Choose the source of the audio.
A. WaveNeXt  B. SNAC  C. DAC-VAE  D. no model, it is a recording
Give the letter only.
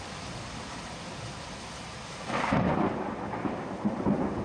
D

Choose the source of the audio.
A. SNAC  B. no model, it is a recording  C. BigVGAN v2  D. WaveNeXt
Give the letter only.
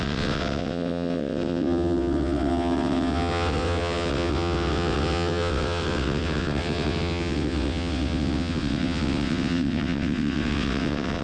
D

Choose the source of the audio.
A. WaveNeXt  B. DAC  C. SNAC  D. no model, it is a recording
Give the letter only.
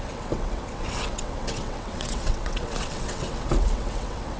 A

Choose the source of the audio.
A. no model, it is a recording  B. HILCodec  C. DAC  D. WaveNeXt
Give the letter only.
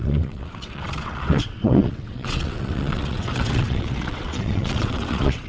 D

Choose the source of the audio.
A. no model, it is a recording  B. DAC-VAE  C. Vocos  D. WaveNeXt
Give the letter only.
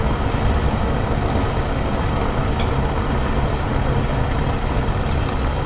A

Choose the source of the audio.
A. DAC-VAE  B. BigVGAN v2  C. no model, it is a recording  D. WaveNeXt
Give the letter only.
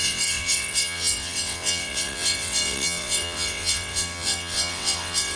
D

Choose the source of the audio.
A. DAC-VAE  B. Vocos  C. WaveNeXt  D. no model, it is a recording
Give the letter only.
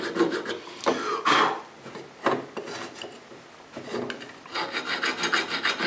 D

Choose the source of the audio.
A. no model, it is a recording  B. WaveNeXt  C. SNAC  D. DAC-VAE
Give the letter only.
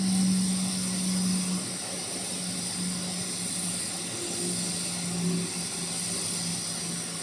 A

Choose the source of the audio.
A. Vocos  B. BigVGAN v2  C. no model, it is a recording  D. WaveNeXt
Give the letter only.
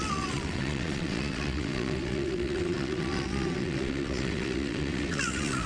D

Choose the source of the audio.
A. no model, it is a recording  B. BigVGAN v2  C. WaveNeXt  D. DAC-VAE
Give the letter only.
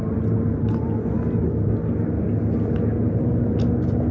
A